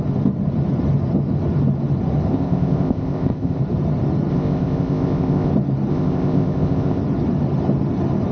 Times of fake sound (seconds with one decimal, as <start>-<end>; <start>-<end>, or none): 2.3-3.6; 4.3-5.5; 5.9-7.0

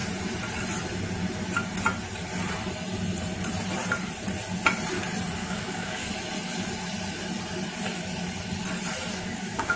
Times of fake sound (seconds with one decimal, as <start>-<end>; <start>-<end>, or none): 5.4-6.1; 9.1-9.8

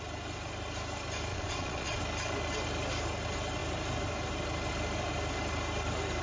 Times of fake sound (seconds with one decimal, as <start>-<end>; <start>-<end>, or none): 1.3-2.0

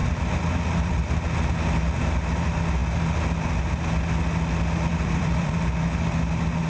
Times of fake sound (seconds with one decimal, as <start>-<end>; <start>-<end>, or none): 0.0-1.1; 4.9-5.5

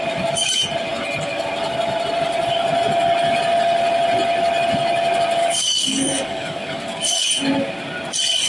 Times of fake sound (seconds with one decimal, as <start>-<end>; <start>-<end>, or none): 5.4-7.3

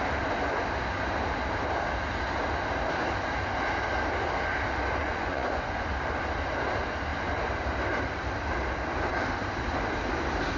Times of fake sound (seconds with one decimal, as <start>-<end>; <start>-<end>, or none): 5.0-5.9

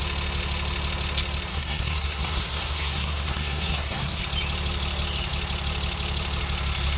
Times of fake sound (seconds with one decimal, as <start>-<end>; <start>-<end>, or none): 1.5-4.2